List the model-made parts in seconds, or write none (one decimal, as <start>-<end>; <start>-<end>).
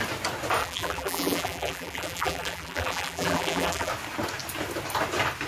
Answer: 0.6-3.9